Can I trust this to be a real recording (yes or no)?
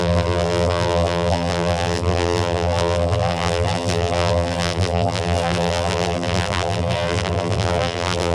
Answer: no